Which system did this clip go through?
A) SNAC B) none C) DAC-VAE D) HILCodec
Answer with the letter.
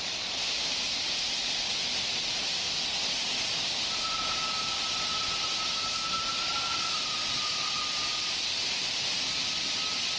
B